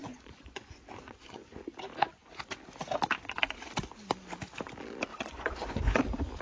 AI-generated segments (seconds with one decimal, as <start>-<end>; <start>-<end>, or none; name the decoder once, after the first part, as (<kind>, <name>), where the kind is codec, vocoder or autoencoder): 0.0-1.6 (vocoder, Vocos); 5.1-6.0